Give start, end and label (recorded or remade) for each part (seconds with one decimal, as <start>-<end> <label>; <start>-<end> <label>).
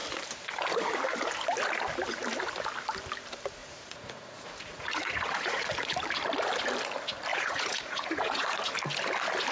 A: 0.0-3.6 recorded; 3.6-5.8 remade; 5.8-7.3 recorded; 7.3-8.7 remade; 8.7-9.5 recorded